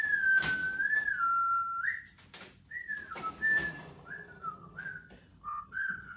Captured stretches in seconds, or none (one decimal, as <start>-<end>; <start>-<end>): 0.0-5.3